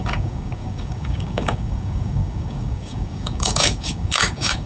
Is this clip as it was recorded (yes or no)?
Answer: no